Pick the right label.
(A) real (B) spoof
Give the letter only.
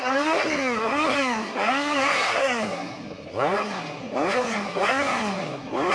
B